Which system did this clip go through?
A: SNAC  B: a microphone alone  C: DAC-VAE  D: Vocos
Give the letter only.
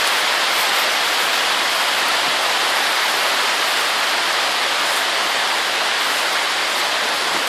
B